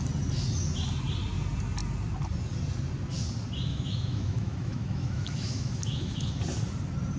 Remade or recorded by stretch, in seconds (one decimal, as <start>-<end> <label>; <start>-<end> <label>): 0.0-3.7 recorded; 3.7-6.3 remade; 6.3-7.2 recorded